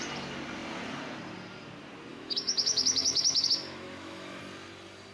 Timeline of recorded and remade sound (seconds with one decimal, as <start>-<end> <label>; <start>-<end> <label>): 0.0-2.1 recorded; 2.1-4.4 remade; 4.4-5.1 recorded